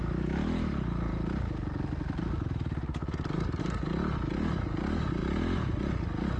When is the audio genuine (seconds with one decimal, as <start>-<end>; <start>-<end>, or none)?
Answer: 0.0-6.4